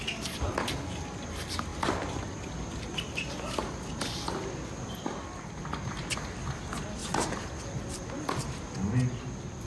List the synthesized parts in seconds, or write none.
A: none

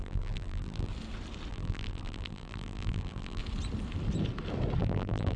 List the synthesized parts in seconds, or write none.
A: 0.0-0.9 (vocoder, BigVGAN v2); 1.5-3.4; 4.8-5.4

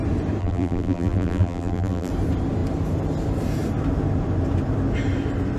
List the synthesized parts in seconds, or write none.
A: 0.4-2.1 (vocoder, BigVGAN v2)

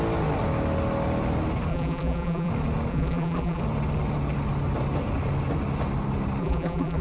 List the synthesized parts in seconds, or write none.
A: 1.7-2.5 (vocoder, BigVGAN v2); 2.9-3.6; 6.4-7.0

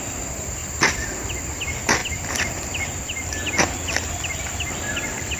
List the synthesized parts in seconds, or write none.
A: none

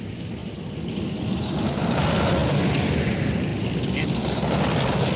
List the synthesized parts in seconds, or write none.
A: 0.0-0.4 (vocoder, BigVGAN v2); 1.2-3.5; 4.0-5.2

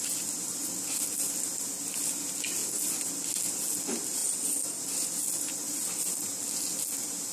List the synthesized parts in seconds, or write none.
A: 4.2-4.8 (vocoder, BigVGAN v2)

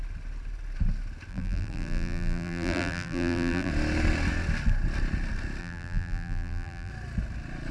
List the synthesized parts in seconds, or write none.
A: 1.3-3.7 (vocoder, BigVGAN v2); 5.6-6.9